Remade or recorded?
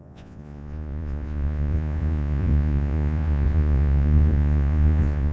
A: remade